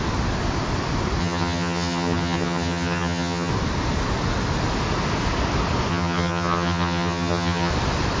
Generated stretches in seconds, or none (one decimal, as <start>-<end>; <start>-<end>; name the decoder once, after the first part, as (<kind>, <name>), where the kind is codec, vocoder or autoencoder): 1.2-3.5 (vocoder, HiFi-GAN); 5.9-7.7